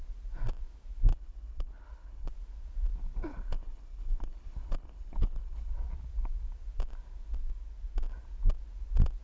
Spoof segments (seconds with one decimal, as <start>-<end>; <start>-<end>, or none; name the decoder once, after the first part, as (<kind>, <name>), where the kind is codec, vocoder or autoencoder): 1.1-2.3 (codec, HILCodec); 3.3-5.7